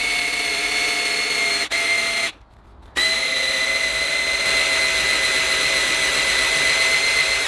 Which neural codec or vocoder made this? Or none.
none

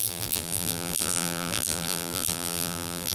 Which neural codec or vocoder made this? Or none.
vocoder, BigVGAN v2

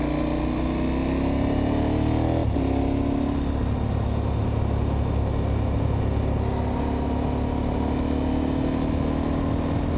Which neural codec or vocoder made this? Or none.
none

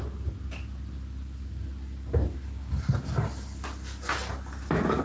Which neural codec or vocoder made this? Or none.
none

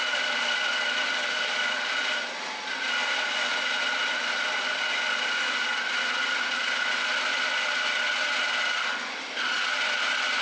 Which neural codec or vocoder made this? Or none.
none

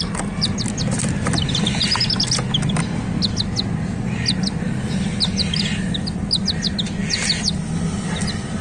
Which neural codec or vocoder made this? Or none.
none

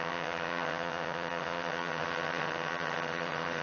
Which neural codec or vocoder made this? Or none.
vocoder, HiFi-GAN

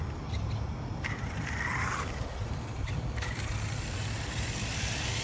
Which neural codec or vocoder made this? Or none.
vocoder, BigVGAN v2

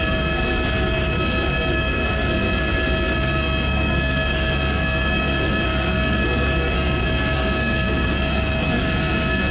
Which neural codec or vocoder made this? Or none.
codec, SNAC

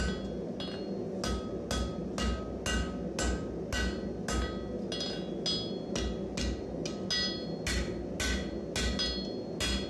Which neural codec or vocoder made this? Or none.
none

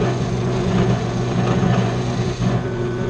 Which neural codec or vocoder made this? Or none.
vocoder, Vocos